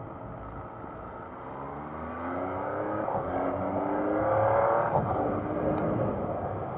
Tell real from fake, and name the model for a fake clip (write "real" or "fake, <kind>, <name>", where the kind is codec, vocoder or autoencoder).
real